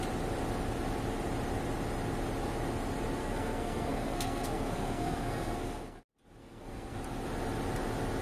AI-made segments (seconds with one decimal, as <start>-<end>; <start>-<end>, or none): 3.2-6.0; 6.4-7.0